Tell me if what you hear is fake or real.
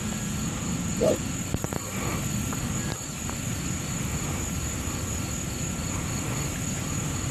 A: real